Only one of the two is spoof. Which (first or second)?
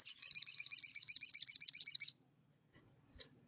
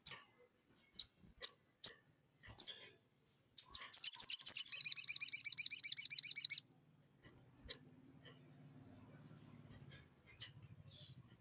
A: first